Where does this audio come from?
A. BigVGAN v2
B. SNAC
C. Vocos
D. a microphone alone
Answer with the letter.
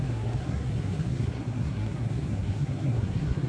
B